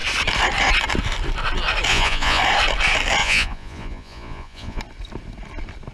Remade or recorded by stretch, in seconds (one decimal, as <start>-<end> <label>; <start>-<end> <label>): 0.0-1.9 recorded; 1.9-2.4 remade; 2.4-3.2 recorded; 3.2-4.8 remade; 4.8-5.9 recorded